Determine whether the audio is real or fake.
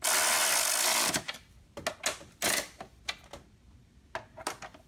real